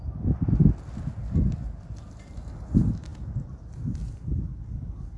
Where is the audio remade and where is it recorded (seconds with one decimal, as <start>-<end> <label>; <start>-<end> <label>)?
0.0-5.2 recorded